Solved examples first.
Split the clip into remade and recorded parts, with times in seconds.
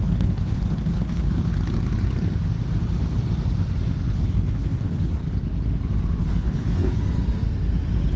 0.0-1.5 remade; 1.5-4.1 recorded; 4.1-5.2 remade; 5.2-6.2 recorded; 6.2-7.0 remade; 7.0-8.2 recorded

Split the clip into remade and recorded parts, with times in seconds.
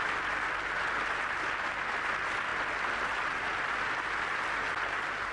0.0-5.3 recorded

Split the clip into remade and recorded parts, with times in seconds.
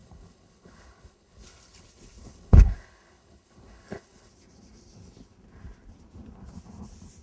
0.0-4.3 remade; 4.3-7.2 recorded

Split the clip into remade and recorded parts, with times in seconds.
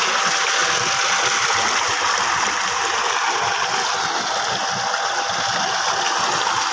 0.0-6.7 recorded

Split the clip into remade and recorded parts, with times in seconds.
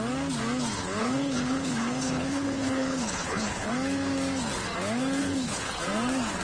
0.0-1.0 recorded; 1.0-3.7 remade; 3.7-5.2 recorded; 5.2-5.8 remade; 5.8-6.4 recorded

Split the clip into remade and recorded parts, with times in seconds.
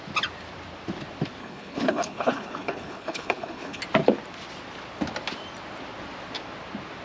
0.0-1.4 recorded; 1.4-3.8 remade; 3.8-7.0 recorded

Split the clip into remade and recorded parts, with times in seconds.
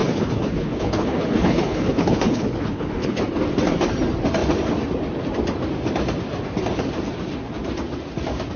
0.0-3.2 remade; 3.2-8.6 recorded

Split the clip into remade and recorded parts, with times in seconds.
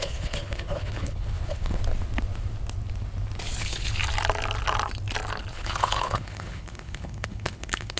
0.0-1.8 remade; 1.8-3.6 recorded; 3.6-4.0 remade; 4.0-5.5 recorded; 5.5-8.0 remade